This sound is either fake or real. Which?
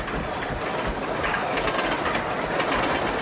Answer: real